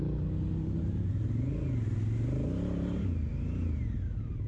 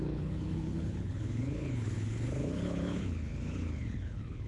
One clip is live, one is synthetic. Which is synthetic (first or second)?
second